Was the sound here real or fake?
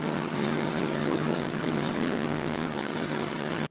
fake